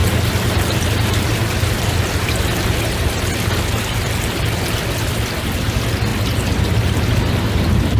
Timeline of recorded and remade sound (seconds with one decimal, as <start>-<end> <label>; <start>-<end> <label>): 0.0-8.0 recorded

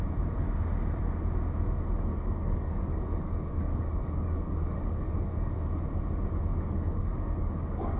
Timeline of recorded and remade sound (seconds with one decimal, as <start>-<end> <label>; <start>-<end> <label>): 0.0-2.1 recorded; 2.1-5.8 remade; 5.8-6.5 recorded; 6.5-8.0 remade

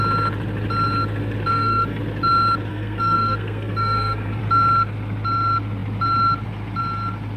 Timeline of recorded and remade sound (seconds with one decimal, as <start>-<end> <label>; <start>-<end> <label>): 0.0-1.5 recorded; 1.5-2.0 remade; 2.0-2.7 recorded; 2.7-4.4 remade; 4.4-7.4 recorded

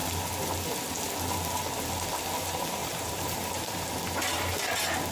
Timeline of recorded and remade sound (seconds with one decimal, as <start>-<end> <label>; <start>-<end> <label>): 0.0-2.8 recorded; 2.8-3.9 remade; 3.9-5.1 recorded